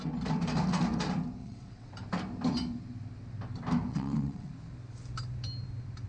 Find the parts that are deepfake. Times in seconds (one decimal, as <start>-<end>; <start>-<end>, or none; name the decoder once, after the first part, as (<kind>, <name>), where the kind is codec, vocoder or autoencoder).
1.4-1.9 (vocoder, WaveNeXt); 3.9-4.5